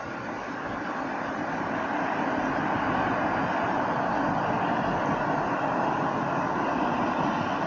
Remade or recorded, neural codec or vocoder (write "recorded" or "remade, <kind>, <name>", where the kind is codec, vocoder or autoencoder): recorded